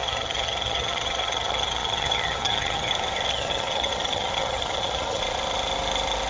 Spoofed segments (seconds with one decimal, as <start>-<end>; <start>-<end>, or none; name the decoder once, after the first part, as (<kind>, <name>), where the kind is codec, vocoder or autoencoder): 0.0-2.9 (vocoder, HiFi-GAN); 3.3-5.2